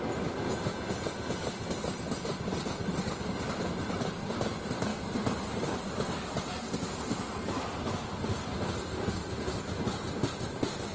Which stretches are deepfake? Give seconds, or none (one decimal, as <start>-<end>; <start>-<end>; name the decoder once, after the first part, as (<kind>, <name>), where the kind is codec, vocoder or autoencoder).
none